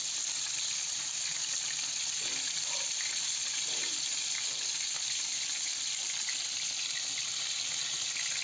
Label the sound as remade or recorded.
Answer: recorded